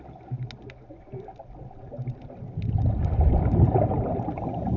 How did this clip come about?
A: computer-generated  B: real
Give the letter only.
B